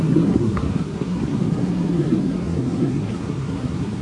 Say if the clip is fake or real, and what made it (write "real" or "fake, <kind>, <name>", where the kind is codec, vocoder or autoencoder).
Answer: fake, codec, SNAC